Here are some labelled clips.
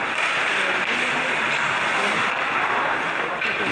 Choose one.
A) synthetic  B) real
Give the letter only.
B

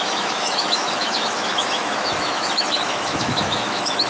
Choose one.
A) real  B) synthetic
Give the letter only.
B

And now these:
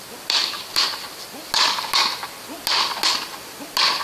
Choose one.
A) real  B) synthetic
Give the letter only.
A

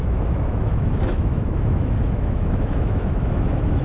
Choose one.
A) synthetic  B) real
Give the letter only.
A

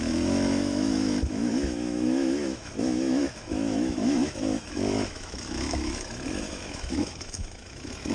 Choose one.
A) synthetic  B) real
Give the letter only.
A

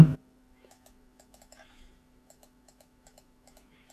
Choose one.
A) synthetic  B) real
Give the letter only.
A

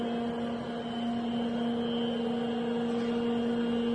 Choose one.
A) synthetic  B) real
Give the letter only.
B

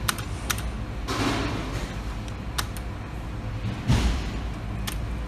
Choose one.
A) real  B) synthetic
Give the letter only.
A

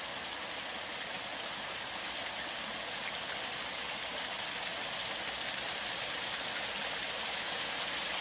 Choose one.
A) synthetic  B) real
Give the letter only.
B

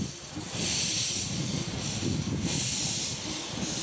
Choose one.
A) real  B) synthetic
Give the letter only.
A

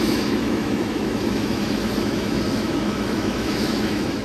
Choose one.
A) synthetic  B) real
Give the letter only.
A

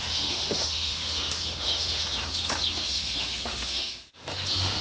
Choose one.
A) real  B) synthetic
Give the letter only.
B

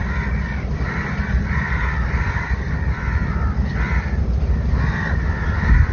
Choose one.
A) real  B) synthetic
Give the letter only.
A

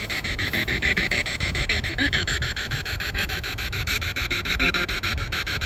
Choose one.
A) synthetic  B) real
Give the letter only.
A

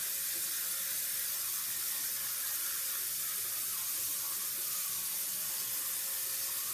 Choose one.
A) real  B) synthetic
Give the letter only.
A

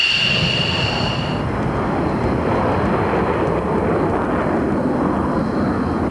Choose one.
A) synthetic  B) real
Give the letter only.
B